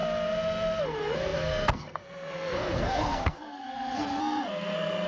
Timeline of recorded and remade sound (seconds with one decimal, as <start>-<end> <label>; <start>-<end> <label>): 0.0-0.8 recorded; 0.8-5.1 remade